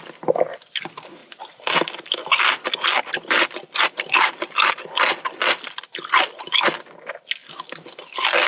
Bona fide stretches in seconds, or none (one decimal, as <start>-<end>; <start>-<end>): 0.0-8.5